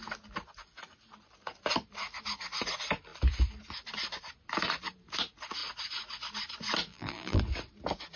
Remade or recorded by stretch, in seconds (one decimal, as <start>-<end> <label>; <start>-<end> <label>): 0.0-6.9 recorded; 6.9-7.4 remade; 7.4-8.2 recorded